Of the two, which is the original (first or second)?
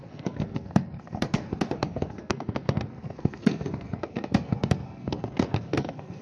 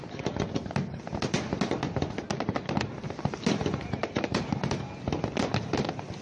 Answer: second